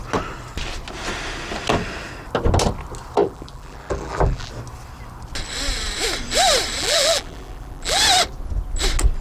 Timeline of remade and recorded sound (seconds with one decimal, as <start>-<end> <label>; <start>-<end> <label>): 0.0-3.2 recorded; 3.2-4.5 remade; 4.5-6.8 recorded; 6.8-8.0 remade; 8.0-9.2 recorded